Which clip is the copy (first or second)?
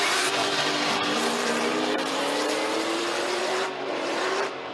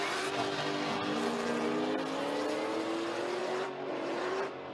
first